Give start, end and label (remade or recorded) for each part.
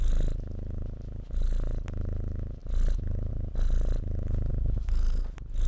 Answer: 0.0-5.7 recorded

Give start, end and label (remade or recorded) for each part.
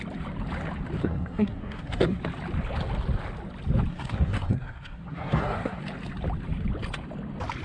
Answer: 0.0-1.0 recorded; 1.0-2.2 remade; 2.2-3.9 recorded; 3.9-5.8 remade; 5.8-7.6 recorded